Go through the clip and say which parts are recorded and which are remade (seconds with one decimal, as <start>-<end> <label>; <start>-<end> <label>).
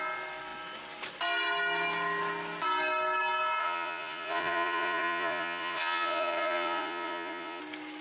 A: 0.0-3.6 recorded; 3.6-7.6 remade; 7.6-8.0 recorded